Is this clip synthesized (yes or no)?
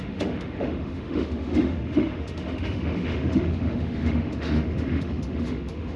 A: yes